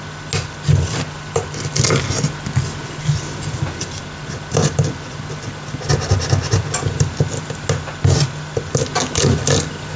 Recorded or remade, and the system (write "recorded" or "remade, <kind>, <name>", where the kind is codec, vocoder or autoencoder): recorded